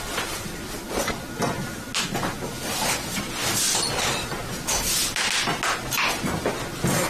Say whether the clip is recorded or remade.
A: recorded